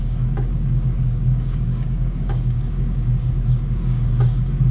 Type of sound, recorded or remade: remade